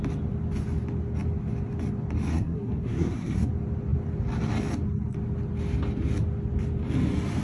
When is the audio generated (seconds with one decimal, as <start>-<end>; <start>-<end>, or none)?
2.3-3.5